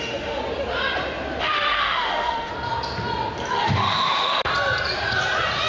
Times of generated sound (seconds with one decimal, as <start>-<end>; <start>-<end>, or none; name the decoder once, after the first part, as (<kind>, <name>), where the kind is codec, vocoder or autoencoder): 0.0-0.4 (autoencoder, DAC-VAE); 1.4-2.5; 3.5-4.5